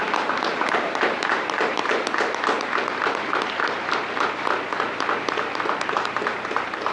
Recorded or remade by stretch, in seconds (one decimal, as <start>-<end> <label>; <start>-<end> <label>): 0.0-1.8 remade; 1.8-5.9 recorded; 5.9-6.9 remade